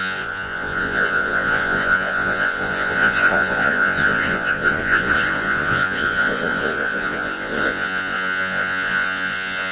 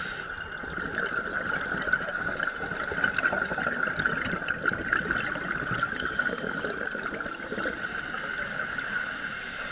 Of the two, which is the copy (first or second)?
first